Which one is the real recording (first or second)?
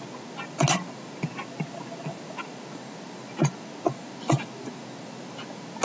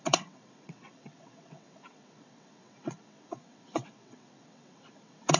first